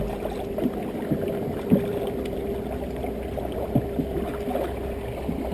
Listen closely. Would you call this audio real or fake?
real